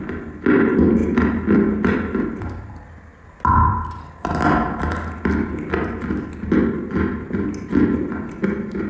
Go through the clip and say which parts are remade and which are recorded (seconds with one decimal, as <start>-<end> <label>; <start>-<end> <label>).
0.0-8.9 recorded